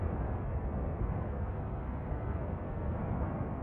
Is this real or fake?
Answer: fake